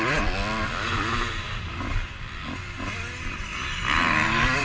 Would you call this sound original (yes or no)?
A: yes